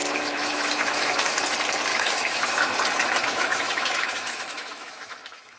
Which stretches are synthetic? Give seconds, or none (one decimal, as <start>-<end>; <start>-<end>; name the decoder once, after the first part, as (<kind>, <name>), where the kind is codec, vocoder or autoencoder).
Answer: 0.0-1.4 (autoencoder, DAC-VAE); 1.9-2.7; 3.2-5.6

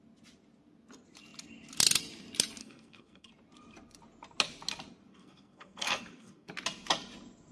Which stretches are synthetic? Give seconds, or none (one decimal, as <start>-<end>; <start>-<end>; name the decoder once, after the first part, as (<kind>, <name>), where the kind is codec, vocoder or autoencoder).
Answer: 2.6-3.3 (codec, SNAC); 5.1-6.5

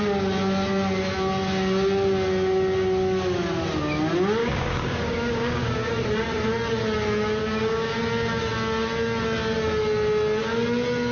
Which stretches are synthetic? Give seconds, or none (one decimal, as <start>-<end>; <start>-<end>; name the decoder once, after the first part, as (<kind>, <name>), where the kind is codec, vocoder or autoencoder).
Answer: 4.4-5.9 (codec, DAC); 7.4-8.0